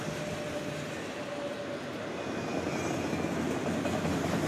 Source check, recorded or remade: recorded